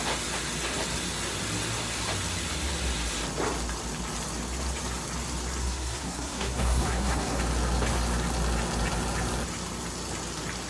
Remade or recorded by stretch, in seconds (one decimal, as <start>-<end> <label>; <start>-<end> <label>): 0.0-5.6 recorded; 5.6-7.4 remade; 7.4-10.7 recorded